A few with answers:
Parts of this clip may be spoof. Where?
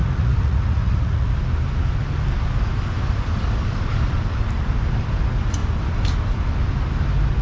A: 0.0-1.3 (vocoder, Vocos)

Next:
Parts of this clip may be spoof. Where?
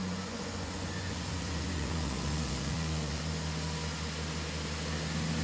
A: 0.0-3.2 (vocoder, Vocos)